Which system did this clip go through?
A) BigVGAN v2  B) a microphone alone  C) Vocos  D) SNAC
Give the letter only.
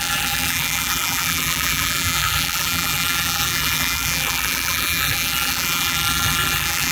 A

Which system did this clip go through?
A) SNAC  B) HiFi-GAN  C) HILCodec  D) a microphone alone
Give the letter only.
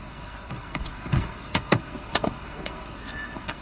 A